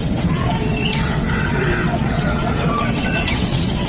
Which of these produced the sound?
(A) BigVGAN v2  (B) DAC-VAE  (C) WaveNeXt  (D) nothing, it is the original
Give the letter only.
C